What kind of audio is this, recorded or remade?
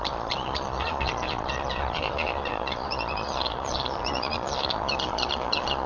remade